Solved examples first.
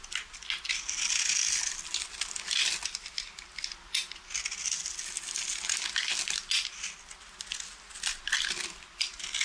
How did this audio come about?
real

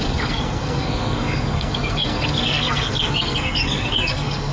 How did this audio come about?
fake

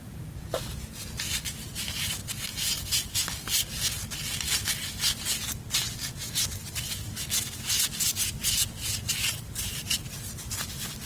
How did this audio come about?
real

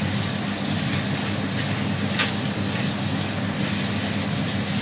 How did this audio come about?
real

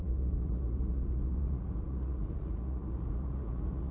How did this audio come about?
fake